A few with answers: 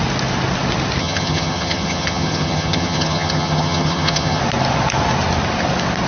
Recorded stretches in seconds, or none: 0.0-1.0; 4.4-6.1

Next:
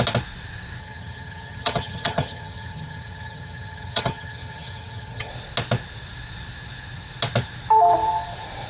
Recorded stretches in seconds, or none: 0.0-0.8; 5.3-8.7